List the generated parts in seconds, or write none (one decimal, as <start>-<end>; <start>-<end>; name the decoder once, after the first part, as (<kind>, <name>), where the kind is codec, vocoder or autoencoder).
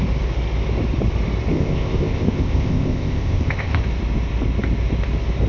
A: 1.5-3.8 (codec, ZipCodec)